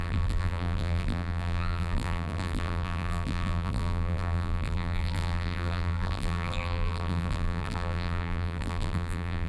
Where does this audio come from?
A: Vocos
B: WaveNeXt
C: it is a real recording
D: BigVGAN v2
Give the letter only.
D